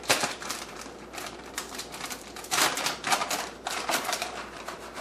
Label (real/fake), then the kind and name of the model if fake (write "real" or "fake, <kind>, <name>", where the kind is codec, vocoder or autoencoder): fake, vocoder, BigVGAN v2